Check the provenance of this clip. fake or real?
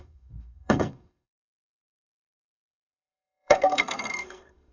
fake